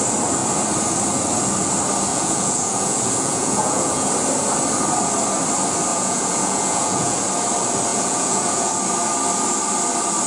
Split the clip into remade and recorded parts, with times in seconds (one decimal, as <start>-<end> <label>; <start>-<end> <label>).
0.0-2.1 recorded; 2.1-4.1 remade; 4.1-5.9 recorded; 5.9-7.2 remade; 7.2-7.9 recorded; 7.9-8.7 remade; 8.7-10.3 recorded